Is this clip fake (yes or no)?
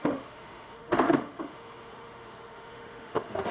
yes